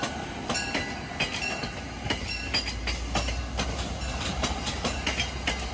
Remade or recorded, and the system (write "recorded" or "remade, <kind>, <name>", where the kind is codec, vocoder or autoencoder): recorded